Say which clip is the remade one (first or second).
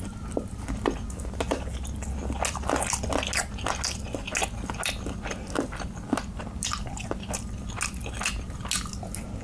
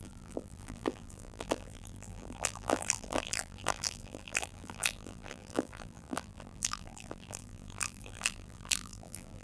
second